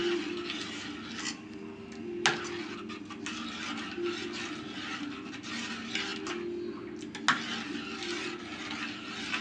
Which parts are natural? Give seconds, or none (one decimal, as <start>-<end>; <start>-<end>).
0.0-9.4